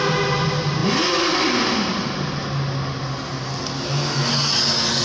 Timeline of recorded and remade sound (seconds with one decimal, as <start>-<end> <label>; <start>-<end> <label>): 0.0-5.0 recorded